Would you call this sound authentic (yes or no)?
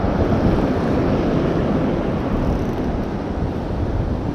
yes